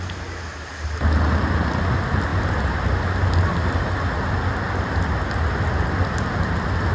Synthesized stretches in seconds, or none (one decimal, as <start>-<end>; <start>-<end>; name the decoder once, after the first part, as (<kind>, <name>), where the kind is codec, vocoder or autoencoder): none